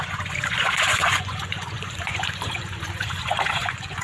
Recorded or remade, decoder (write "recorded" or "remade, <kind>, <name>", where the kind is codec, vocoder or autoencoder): remade, vocoder, Vocos